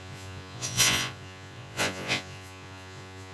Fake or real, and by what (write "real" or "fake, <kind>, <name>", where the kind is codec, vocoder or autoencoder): fake, vocoder, Vocos